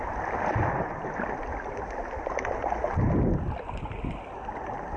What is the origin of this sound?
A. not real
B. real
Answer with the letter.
B